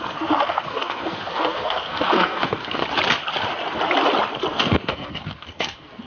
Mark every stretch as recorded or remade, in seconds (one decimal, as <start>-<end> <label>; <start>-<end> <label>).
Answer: 0.0-2.8 remade; 2.8-4.5 recorded; 4.5-6.1 remade